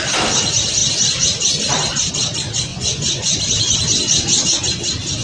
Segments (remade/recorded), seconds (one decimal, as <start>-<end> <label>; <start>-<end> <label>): 0.0-2.7 recorded; 2.7-3.4 remade; 3.4-5.2 recorded